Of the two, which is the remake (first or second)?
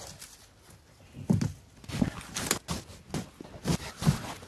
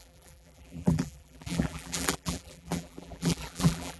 second